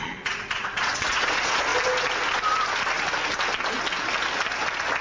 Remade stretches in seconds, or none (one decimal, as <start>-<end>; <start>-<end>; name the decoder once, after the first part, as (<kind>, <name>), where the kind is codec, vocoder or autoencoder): 0.0-1.7 (vocoder, Vocos)